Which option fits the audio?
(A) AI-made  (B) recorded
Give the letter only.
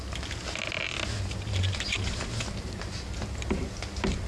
B